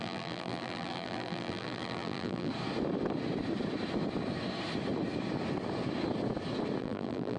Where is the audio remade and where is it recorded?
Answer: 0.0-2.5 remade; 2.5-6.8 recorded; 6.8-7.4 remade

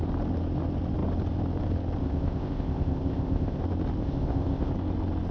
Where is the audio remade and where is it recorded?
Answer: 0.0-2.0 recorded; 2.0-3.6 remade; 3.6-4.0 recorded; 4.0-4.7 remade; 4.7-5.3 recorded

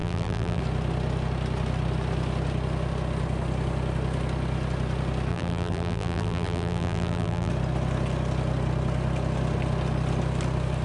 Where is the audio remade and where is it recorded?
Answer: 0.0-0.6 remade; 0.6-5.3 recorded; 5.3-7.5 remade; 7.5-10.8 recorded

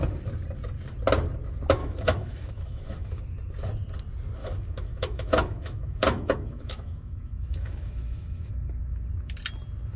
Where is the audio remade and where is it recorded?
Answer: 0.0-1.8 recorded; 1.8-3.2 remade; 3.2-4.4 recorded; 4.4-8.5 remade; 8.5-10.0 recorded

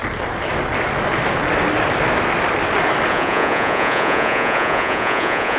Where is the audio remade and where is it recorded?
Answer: 0.0-3.1 recorded; 3.1-5.6 remade

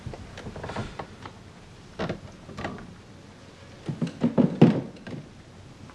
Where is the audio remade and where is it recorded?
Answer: 0.0-5.9 recorded